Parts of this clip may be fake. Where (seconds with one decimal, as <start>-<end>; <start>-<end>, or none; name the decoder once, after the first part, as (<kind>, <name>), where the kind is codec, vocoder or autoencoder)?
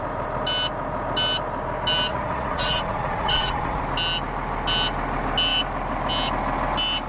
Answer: 2.1-3.8 (vocoder, Vocos)